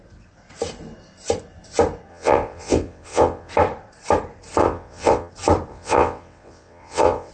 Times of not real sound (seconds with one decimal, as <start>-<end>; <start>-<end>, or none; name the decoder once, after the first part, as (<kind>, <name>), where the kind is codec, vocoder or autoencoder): 2.1-3.5 (vocoder, WaveNeXt); 4.6-5.3; 5.7-7.3